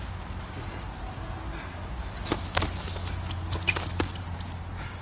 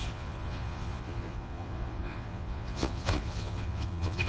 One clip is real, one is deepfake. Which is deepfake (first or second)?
second